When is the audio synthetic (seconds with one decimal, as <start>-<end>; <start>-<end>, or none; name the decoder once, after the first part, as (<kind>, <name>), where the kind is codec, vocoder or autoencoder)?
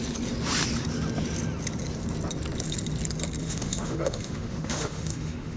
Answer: 3.4-5.6 (autoencoder, DAC-VAE)